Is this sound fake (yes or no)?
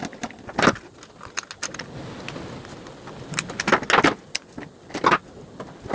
no